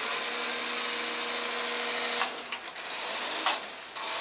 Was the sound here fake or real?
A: real